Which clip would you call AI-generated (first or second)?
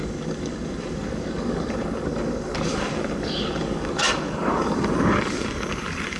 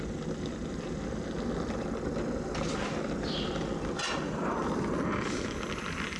first